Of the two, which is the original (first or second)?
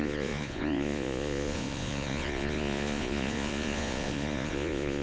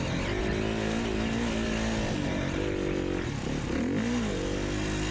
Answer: second